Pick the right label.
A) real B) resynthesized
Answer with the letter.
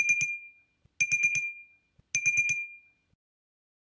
A